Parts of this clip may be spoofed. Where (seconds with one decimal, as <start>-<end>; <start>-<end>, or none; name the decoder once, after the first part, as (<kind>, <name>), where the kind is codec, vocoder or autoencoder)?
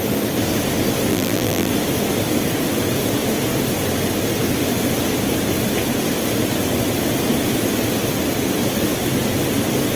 1.1-1.7 (vocoder, BigVGAN v2)